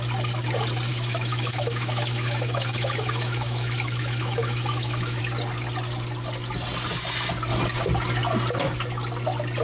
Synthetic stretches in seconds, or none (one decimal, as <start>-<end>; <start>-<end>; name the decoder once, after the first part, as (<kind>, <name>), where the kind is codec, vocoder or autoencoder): 0.9-5.2 (autoencoder, DAC-VAE)